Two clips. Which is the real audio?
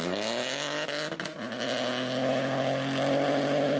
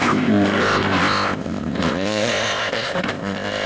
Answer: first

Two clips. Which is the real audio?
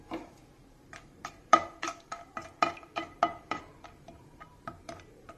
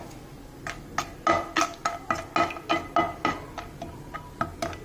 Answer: second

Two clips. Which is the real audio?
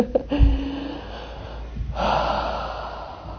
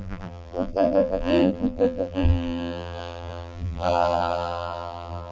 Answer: first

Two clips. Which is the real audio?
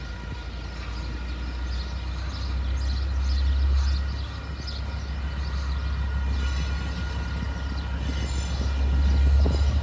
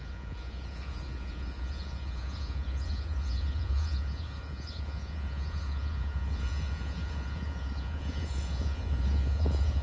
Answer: first